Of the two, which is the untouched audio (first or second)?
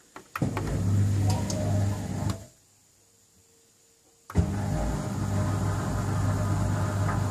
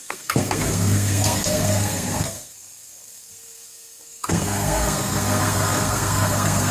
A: first